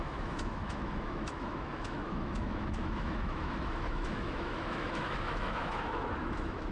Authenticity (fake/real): fake